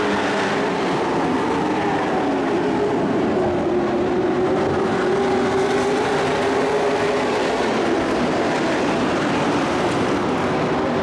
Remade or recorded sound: recorded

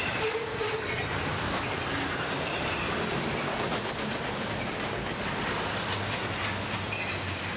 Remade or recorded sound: recorded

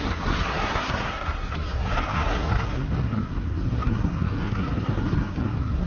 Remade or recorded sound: remade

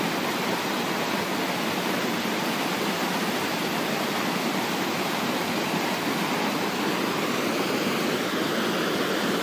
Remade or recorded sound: remade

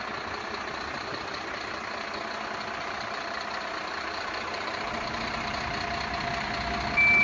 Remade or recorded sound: recorded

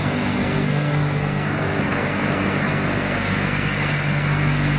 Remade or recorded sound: remade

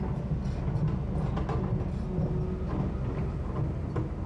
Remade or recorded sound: recorded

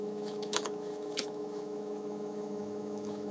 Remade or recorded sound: remade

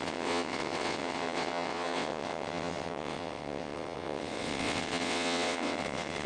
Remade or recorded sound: remade